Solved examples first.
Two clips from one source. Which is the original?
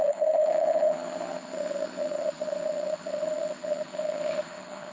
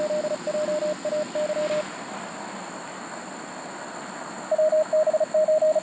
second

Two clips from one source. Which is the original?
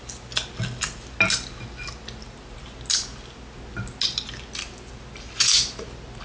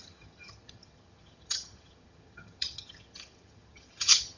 first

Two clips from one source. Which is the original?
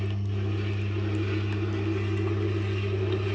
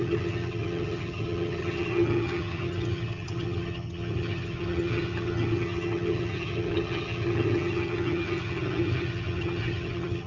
first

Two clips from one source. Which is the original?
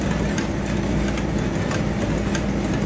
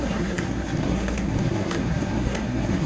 first